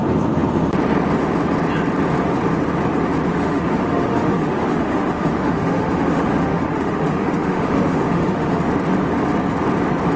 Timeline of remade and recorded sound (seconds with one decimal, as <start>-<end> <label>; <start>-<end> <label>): 0.0-3.3 recorded; 3.3-8.6 remade; 8.6-10.2 recorded